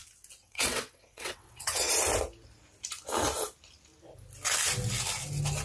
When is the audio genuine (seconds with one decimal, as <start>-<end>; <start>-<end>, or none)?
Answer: 0.0-0.4; 1.9-5.6